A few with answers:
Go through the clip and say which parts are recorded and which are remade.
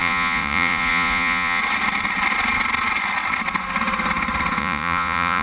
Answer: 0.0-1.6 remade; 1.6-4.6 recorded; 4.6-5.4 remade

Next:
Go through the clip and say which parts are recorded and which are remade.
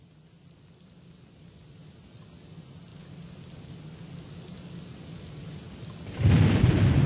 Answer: 0.0-7.1 recorded